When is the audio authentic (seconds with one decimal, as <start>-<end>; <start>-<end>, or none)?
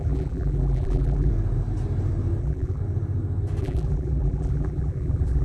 1.3-2.4; 2.8-3.6